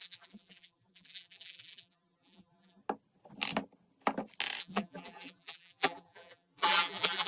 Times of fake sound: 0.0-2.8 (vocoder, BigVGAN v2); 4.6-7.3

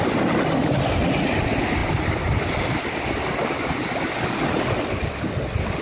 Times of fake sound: none

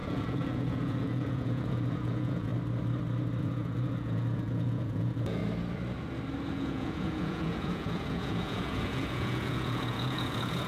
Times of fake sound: 0.0-2.5 (vocoder, Vocos); 3.4-5.4; 6.5-10.7

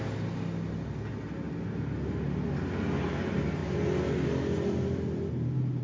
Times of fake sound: none

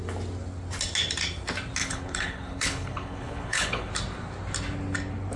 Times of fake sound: 1.8-3.9 (codec, HILCodec)